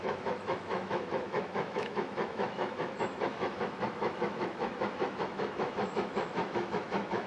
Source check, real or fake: fake